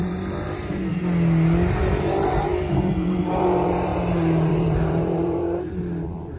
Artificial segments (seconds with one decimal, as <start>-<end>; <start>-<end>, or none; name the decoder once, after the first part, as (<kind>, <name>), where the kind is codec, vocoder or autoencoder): 0.0-0.8 (vocoder, BigVGAN v2); 1.8-6.4